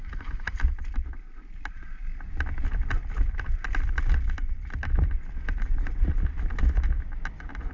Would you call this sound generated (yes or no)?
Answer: no